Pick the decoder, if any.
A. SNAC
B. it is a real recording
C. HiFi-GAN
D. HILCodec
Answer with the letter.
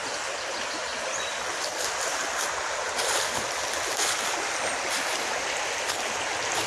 B